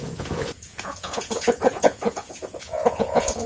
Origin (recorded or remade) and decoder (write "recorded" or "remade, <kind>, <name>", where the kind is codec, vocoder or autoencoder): remade, vocoder, Vocos